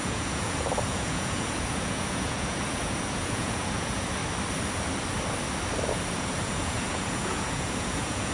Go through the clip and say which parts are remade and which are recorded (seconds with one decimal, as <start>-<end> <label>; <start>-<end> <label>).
0.0-4.2 remade; 4.2-5.9 recorded; 5.9-8.3 remade